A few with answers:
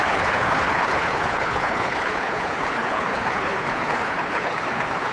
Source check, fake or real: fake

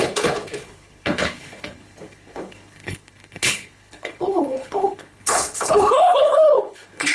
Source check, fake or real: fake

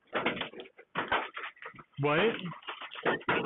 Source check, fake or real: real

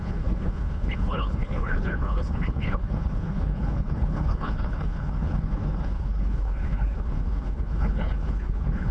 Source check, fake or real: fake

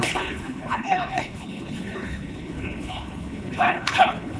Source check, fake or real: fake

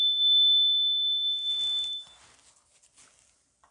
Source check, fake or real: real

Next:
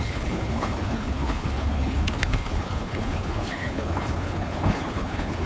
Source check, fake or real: fake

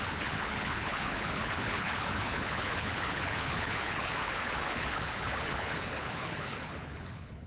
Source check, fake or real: fake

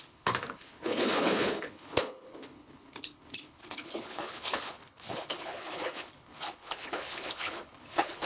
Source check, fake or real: fake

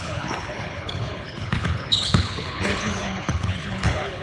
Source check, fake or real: fake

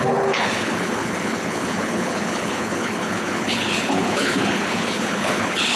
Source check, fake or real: fake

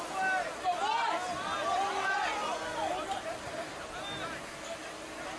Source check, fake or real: real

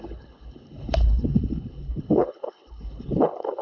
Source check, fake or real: fake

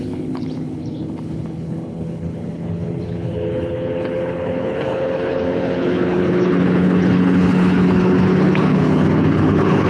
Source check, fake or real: fake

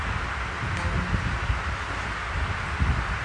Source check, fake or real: real